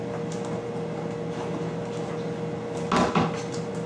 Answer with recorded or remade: recorded